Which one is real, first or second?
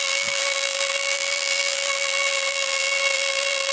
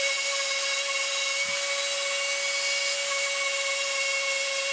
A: second